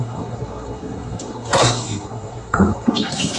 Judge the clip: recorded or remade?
remade